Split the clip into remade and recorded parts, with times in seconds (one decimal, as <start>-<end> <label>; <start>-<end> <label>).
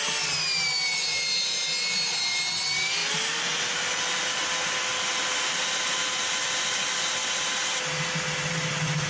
0.0-9.1 recorded